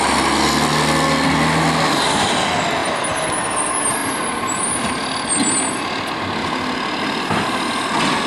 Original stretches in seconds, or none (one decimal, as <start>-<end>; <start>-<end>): 0.0-8.3